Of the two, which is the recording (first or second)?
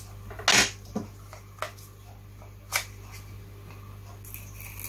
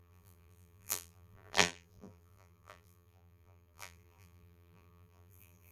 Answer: first